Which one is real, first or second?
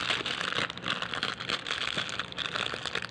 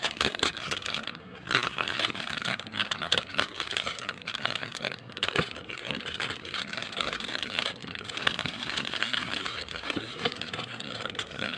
first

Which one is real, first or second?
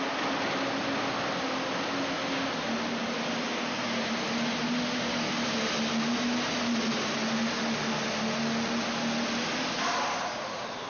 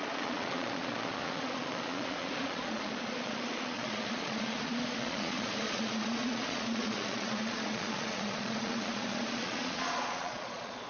first